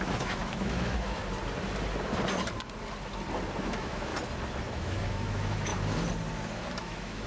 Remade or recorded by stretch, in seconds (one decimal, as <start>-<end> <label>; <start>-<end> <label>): 0.0-1.2 remade; 1.2-3.6 recorded; 3.6-4.1 remade; 4.1-4.7 recorded; 4.7-5.7 remade; 5.7-6.8 recorded; 6.8-7.3 remade